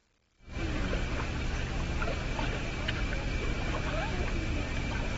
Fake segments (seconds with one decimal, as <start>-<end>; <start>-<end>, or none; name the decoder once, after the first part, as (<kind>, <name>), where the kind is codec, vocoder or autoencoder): none